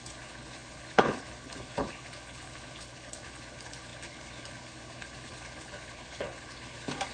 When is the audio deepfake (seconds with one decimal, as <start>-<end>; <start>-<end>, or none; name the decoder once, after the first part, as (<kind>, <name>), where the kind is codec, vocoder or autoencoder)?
0.0-7.1 (codec, HILCodec)